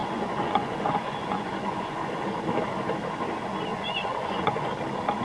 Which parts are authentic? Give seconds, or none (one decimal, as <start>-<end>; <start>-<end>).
2.1-3.7; 4.7-5.2